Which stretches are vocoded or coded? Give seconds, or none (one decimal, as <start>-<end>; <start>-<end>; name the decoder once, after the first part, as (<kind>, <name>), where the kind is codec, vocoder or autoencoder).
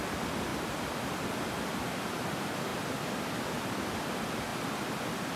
2.7-4.0 (vocoder, BigVGAN v2); 4.5-5.0